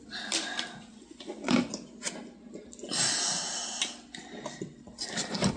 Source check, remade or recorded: recorded